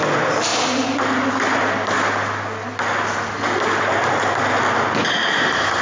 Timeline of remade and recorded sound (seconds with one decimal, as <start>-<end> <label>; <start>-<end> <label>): 0.0-5.8 recorded